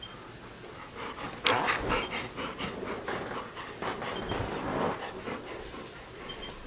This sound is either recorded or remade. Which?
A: recorded